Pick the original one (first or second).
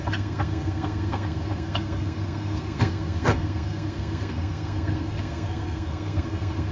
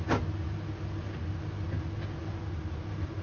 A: second